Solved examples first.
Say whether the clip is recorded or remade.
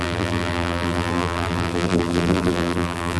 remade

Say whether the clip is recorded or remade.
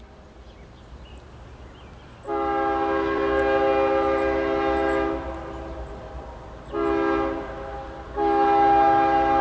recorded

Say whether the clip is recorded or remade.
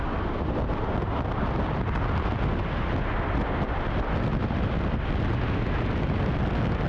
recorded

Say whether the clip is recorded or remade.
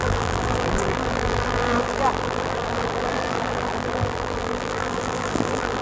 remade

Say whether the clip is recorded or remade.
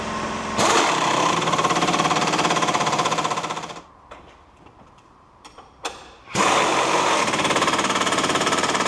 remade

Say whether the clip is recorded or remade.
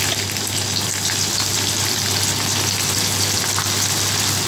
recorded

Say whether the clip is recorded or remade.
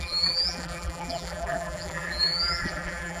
remade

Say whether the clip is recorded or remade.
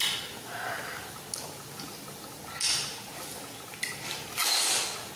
recorded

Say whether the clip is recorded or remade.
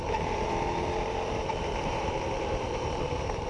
remade